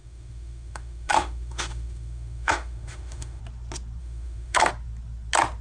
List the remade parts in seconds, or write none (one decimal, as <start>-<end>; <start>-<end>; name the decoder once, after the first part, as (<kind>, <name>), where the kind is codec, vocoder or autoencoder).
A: 0.0-3.4 (autoencoder, DAC-VAE); 4.0-4.7